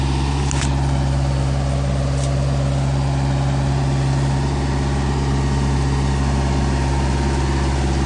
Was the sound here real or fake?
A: real